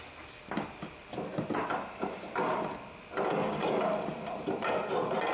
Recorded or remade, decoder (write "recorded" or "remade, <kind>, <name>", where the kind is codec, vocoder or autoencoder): recorded